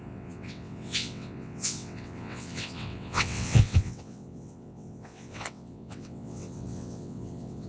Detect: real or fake fake